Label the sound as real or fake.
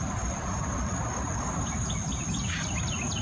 real